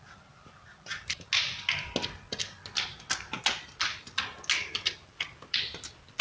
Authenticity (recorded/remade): recorded